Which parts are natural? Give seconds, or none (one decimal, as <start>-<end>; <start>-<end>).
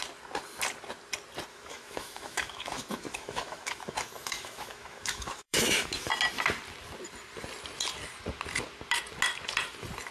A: 0.0-1.5; 6.1-10.1